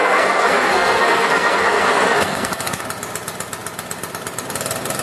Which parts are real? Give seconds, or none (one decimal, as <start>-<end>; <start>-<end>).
2.8-5.0